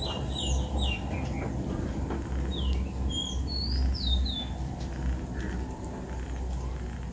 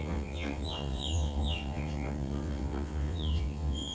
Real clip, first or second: first